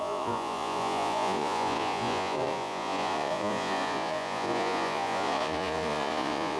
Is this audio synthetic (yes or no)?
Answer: yes